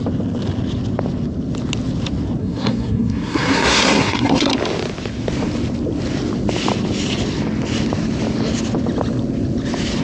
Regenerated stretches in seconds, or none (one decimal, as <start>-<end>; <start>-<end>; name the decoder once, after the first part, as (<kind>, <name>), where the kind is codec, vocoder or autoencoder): 2.4-4.5 (codec, SNAC)